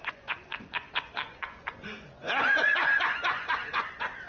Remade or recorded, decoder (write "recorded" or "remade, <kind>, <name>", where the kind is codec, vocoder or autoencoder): remade, vocoder, Vocos